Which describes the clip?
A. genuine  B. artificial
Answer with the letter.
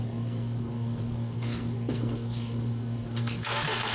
B